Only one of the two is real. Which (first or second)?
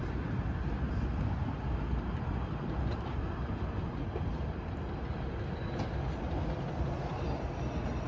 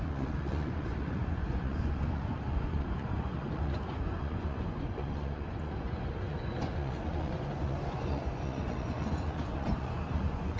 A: first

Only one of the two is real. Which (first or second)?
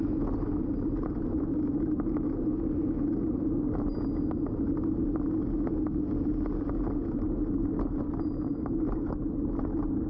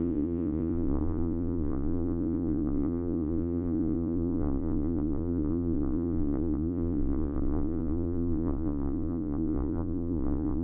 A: first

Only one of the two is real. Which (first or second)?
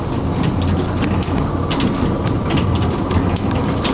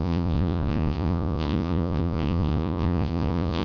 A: first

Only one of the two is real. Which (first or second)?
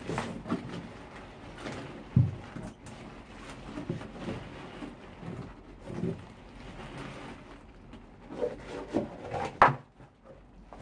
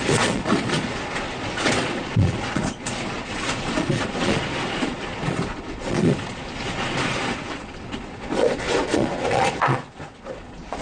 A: first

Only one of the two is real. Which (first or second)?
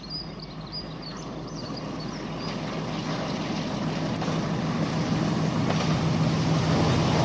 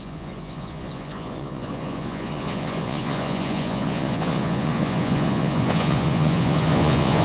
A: first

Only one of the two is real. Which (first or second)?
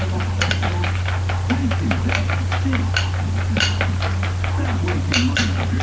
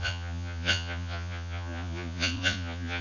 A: first